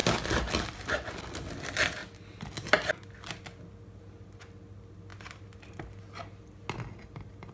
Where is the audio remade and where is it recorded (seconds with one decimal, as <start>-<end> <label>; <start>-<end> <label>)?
0.0-7.5 recorded